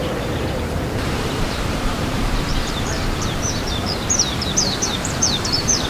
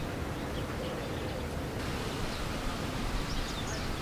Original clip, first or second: second